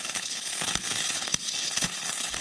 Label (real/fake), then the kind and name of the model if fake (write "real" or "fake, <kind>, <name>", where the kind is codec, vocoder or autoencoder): fake, codec, HILCodec